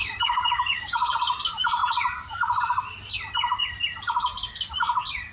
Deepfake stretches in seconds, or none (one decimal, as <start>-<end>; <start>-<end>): 0.0-1.1